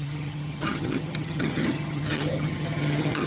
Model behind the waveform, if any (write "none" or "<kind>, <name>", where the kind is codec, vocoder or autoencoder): vocoder, HiFi-GAN